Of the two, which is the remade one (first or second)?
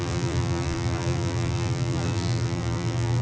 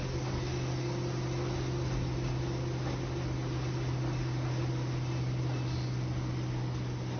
first